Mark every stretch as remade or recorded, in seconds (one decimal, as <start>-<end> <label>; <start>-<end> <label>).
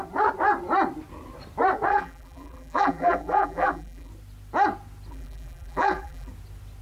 0.0-1.9 recorded; 1.9-4.1 remade; 4.1-5.1 recorded; 5.1-6.3 remade; 6.3-6.8 recorded